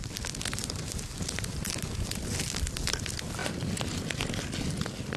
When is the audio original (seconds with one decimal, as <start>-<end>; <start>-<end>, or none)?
0.0-0.6; 2.2-5.2